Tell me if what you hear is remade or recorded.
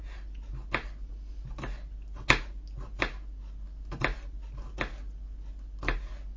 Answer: recorded